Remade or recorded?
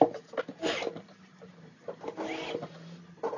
recorded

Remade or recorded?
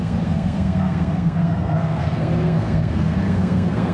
remade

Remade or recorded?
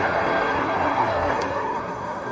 remade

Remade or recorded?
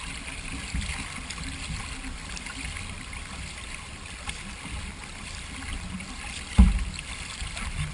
recorded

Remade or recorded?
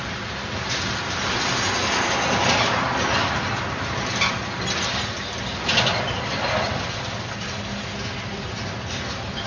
recorded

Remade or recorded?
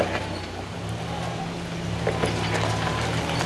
recorded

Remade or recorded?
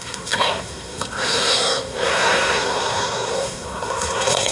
remade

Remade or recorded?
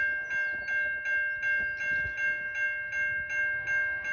recorded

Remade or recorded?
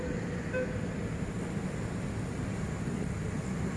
recorded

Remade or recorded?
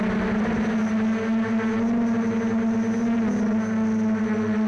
recorded